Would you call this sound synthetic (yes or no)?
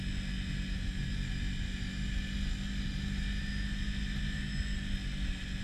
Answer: no